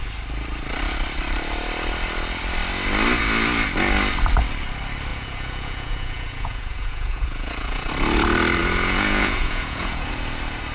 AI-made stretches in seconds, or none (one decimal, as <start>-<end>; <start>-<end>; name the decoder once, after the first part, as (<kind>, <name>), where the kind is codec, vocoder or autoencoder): 5.1-7.9 (vocoder, Vocos); 8.6-10.1